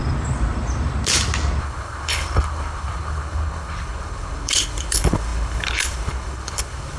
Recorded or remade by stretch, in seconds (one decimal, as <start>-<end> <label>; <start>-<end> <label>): 0.0-1.6 recorded; 1.6-7.0 remade

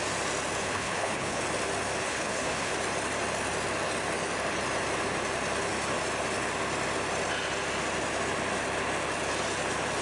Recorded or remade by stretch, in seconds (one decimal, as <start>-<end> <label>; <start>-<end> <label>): 0.0-0.6 recorded; 0.6-1.4 remade; 1.4-2.0 recorded; 2.0-2.7 remade; 2.7-10.0 recorded